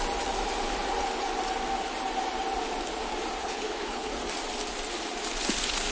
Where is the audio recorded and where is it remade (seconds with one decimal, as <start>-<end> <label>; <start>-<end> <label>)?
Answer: 0.0-3.4 recorded; 3.4-4.1 remade; 4.1-5.9 recorded